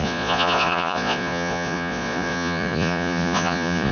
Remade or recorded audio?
remade